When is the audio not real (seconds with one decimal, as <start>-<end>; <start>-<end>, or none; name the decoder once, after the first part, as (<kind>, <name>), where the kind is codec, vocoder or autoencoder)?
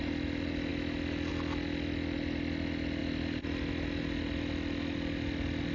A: none